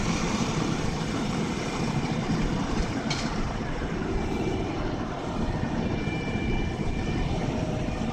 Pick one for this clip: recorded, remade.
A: remade